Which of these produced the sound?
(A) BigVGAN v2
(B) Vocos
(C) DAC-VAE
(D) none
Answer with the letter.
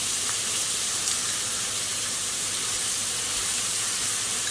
A